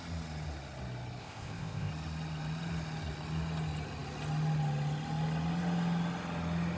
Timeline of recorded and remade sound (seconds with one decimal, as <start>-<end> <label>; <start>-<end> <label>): 0.0-1.2 recorded; 1.2-1.9 remade; 1.9-6.8 recorded